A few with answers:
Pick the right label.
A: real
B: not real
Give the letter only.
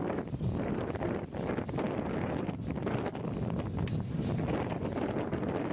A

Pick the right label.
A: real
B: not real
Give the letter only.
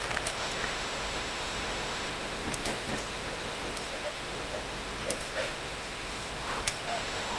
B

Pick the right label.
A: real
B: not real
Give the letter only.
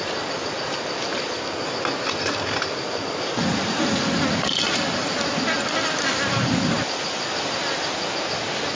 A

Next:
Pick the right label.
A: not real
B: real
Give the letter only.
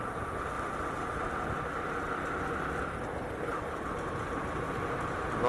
B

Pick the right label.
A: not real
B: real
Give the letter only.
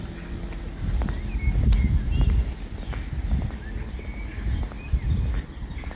B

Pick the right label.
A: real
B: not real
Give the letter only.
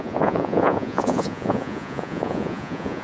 B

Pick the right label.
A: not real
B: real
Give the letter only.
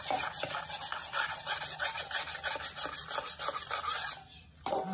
B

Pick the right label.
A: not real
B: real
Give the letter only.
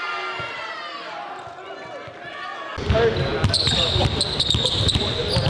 B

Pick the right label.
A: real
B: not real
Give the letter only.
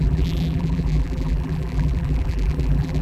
B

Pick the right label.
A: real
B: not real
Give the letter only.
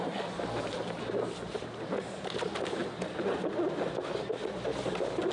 A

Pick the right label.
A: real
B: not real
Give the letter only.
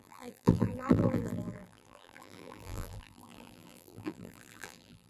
B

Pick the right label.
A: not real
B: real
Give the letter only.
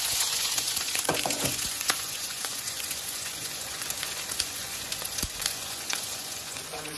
A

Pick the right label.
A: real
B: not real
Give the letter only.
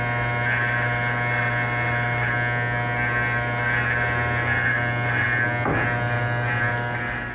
A